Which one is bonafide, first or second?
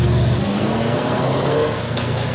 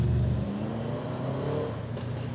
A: second